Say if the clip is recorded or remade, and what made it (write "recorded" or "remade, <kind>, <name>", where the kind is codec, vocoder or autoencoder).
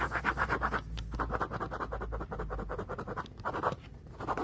recorded